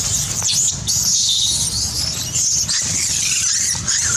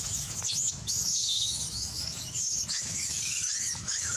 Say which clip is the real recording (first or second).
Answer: first